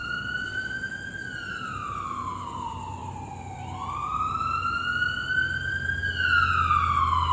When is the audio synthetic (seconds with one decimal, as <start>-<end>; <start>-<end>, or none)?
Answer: none